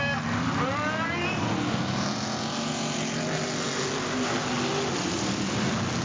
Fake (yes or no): no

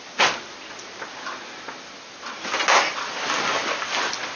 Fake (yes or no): no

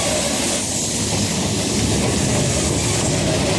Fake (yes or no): no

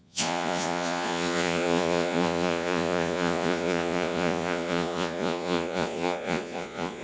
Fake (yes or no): yes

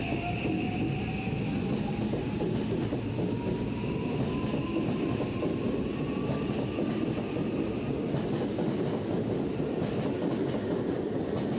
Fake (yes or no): no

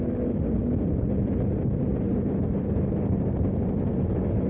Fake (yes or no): no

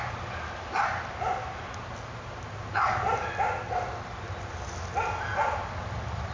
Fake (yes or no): no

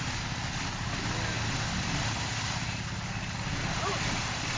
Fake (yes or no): no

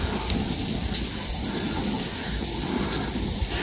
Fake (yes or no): no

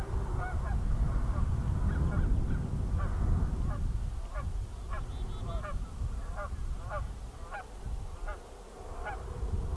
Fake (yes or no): no